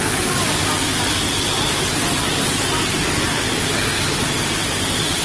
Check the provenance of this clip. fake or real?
real